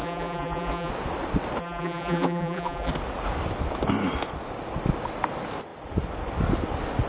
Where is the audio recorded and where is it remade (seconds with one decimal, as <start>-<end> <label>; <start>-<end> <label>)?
0.0-0.9 remade; 0.9-1.6 recorded; 1.6-2.9 remade; 2.9-7.1 recorded